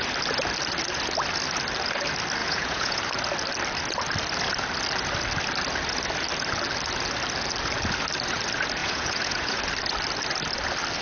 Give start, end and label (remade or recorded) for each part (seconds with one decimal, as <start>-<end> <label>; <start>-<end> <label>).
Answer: 0.0-2.4 recorded; 2.4-3.0 remade; 3.0-8.8 recorded; 8.8-9.6 remade; 9.6-11.0 recorded